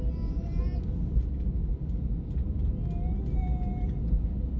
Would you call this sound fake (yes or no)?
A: no